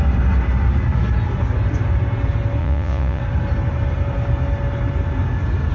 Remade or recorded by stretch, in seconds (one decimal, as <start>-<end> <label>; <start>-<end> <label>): 0.0-2.6 recorded; 2.6-3.2 remade; 3.2-5.7 recorded